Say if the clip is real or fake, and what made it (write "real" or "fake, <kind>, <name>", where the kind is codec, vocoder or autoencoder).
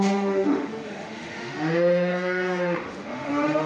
fake, autoencoder, DAC-VAE